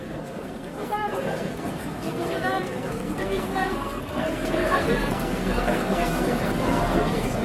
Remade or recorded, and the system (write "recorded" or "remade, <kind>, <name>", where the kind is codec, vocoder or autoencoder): remade, codec, SNAC